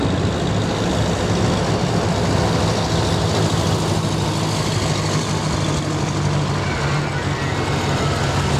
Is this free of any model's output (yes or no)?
yes